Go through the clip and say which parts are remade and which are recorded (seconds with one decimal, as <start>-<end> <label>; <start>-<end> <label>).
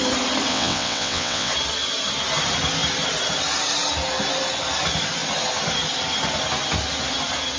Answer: 0.0-0.5 recorded; 0.5-1.5 remade; 1.5-7.6 recorded